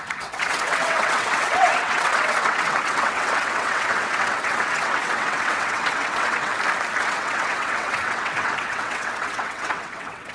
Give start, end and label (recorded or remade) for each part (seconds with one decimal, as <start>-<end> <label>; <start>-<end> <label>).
0.0-6.5 remade; 6.5-7.0 recorded; 7.0-10.3 remade